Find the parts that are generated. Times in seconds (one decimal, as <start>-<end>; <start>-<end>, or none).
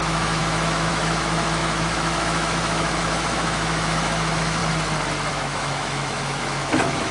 0.0-4.6; 5.3-7.1